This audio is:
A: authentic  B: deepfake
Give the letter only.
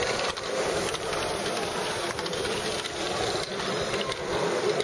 A